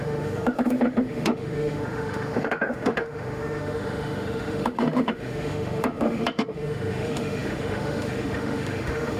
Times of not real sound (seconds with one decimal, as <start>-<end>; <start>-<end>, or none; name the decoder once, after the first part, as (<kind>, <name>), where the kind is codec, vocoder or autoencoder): 0.0-9.2 (autoencoder, DAC-VAE)